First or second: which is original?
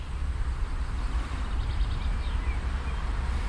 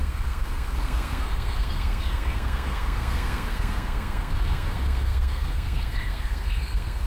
first